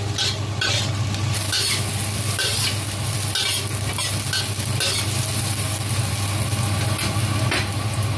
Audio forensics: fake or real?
real